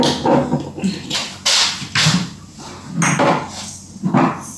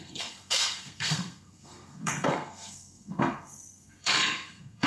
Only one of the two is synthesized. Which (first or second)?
second